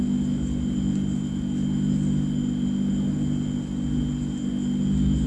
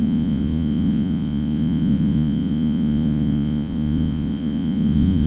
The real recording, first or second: first